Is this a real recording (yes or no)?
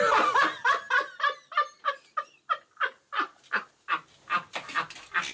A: yes